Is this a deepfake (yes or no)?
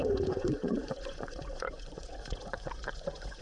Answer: yes